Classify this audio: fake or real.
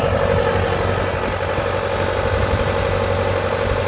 real